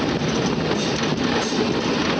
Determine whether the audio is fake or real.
real